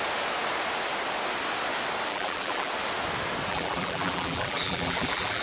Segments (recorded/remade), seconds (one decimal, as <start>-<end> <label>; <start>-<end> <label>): 0.0-2.1 recorded; 2.1-2.7 remade; 2.7-3.5 recorded; 3.5-5.4 remade

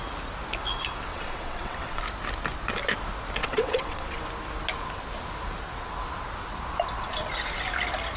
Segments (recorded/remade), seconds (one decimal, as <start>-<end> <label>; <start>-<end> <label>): 0.0-1.1 recorded; 1.1-2.0 remade; 2.0-3.4 recorded; 3.4-4.2 remade; 4.2-8.2 recorded

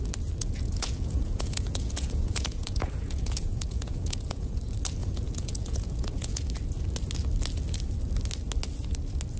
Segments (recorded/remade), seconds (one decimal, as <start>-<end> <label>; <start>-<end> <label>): 0.0-0.4 recorded; 0.4-4.6 remade; 4.6-5.0 recorded; 5.0-6.4 remade; 6.4-9.4 recorded

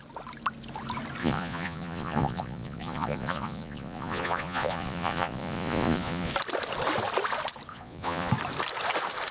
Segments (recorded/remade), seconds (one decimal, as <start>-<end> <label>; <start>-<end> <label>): 0.0-1.2 recorded; 1.2-6.3 remade; 6.3-7.7 recorded; 7.7-8.3 remade; 8.3-9.3 recorded

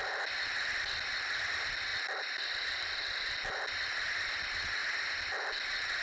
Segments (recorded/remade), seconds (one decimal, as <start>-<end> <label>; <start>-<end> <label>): 0.0-6.0 recorded